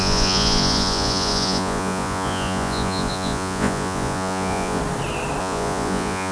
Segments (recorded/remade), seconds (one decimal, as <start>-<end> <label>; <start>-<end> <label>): 0.0-4.8 remade; 4.8-5.4 recorded; 5.4-6.3 remade